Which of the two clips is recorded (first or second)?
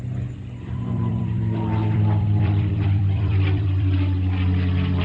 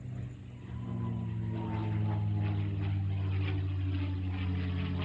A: second